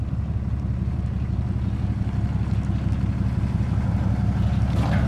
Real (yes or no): yes